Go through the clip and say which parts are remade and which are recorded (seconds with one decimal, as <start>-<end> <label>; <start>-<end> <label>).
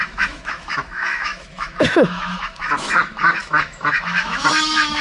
0.0-5.0 remade